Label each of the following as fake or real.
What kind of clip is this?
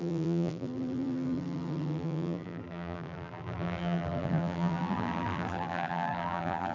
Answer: fake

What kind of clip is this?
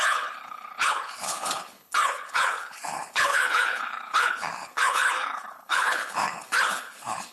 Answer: fake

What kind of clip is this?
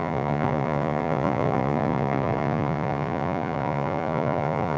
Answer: fake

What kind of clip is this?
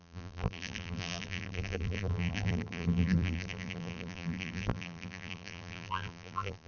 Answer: fake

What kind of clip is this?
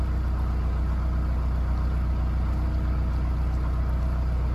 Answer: real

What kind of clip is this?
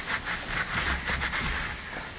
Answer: real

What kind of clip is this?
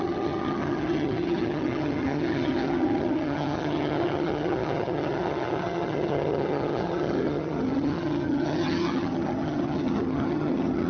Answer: fake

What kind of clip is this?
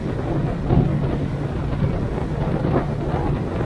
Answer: real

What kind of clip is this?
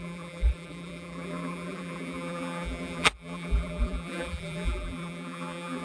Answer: fake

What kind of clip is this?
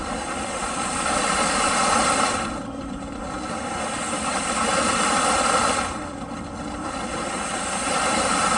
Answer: fake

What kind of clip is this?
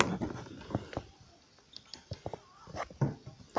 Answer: real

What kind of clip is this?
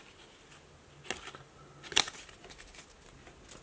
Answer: real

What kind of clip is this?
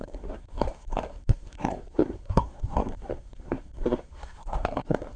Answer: fake